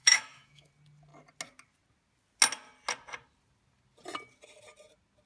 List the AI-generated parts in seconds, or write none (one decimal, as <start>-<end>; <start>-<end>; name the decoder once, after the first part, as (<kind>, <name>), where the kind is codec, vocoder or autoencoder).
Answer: 0.0-0.7 (autoencoder, DAC-VAE)